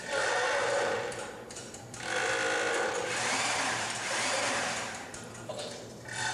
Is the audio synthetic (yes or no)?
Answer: yes